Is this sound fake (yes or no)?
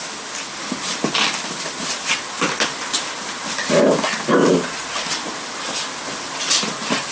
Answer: no